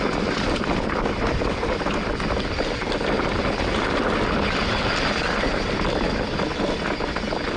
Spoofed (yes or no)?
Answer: no